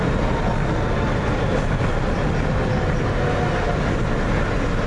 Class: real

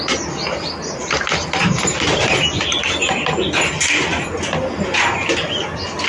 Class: real